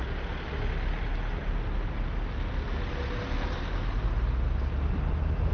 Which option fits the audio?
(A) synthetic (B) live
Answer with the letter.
B